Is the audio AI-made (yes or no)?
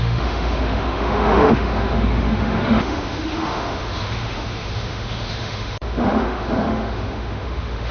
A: yes